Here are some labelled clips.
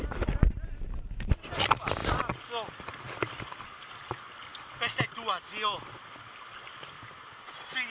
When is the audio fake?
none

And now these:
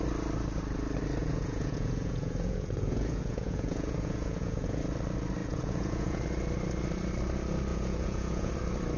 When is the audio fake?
1.2-4.8 (vocoder, Vocos); 5.4-6.2; 7.7-8.5